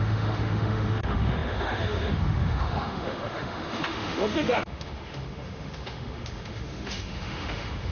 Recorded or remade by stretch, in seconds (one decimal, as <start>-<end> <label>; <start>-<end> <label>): 0.0-7.9 remade